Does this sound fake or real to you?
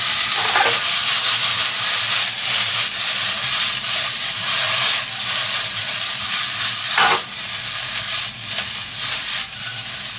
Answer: real